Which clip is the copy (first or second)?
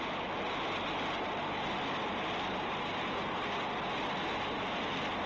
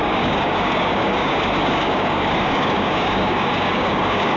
second